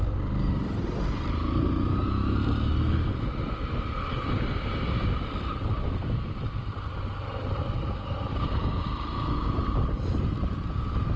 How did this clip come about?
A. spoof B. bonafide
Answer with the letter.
B